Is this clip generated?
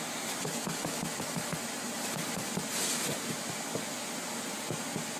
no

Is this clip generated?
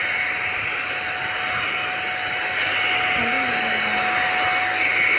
no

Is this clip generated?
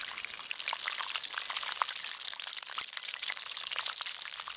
no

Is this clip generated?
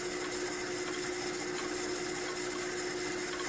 no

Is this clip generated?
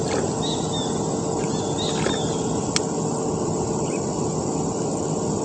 no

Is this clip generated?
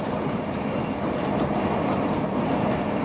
yes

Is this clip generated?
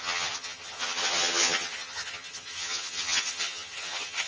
yes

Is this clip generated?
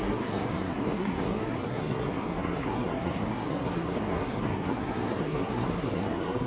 yes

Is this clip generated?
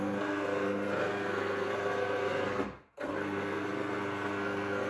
yes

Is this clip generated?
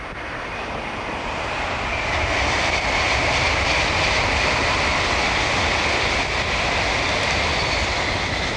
no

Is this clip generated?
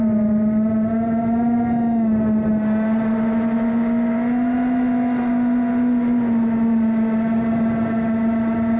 no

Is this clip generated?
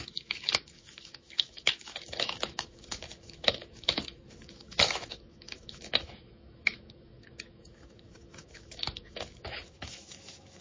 yes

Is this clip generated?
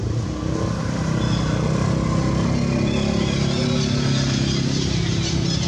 no